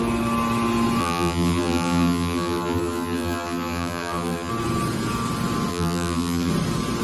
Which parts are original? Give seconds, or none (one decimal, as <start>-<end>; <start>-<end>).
0.0-1.0; 4.5-5.7; 6.5-7.0